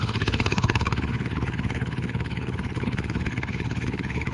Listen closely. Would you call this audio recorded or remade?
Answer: remade